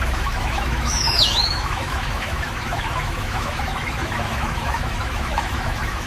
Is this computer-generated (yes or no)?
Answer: yes